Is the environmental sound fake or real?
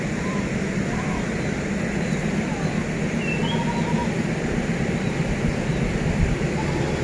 real